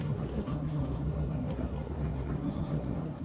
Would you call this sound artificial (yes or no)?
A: yes